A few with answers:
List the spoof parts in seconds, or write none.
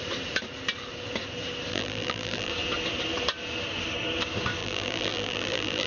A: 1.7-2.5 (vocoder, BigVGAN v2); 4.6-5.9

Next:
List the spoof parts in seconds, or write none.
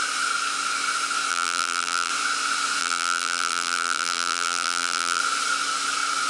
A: 1.3-2.1 (vocoder, BigVGAN v2); 2.8-5.2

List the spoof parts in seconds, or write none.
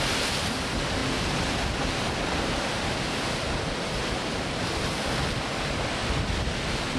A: 1.0-1.6 (vocoder, BigVGAN v2)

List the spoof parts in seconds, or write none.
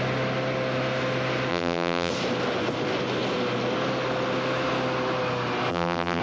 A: 1.5-2.1 (vocoder, BigVGAN v2); 5.7-6.2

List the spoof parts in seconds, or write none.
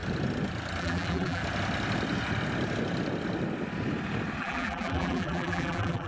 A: 0.8-1.4 (vocoder, BigVGAN v2); 4.4-6.1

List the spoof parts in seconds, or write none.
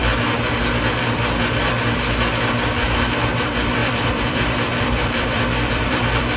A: 3.4-6.4 (vocoder, BigVGAN v2)